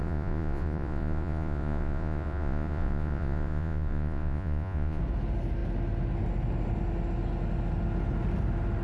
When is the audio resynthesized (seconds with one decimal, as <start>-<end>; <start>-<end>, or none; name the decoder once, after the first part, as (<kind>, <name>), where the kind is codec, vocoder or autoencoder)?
0.0-5.0 (vocoder, Vocos)